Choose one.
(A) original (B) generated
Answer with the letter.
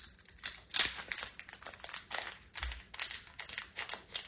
A